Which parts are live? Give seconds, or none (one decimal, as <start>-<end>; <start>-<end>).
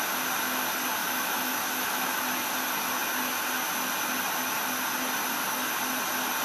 0.0-1.0; 2.1-6.4